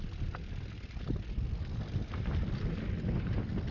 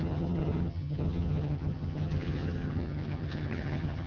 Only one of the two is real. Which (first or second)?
first